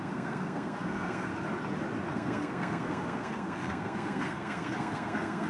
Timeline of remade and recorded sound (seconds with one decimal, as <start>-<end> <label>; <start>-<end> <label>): 0.0-1.3 remade; 1.3-2.1 recorded; 2.1-5.5 remade